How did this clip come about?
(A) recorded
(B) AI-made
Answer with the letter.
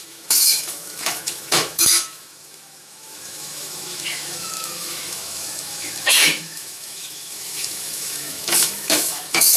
B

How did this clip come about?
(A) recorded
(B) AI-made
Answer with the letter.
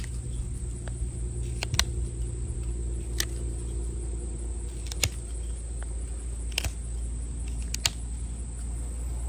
A